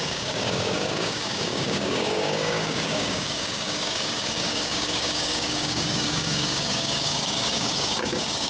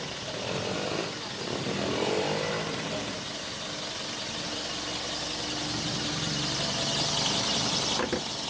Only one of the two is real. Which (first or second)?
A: second